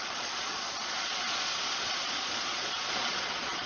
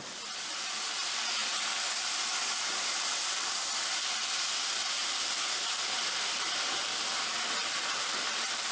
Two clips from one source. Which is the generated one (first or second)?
first